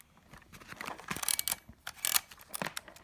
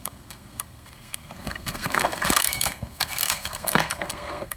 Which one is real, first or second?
first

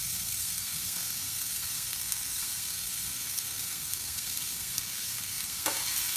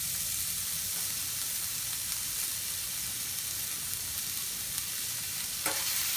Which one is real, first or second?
second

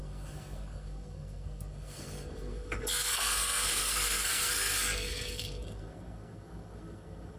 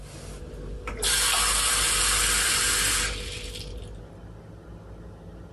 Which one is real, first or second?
second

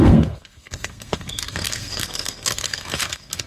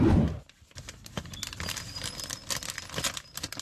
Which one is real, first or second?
second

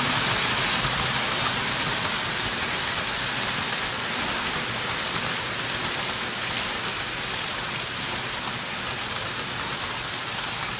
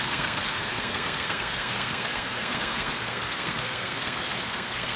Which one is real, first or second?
first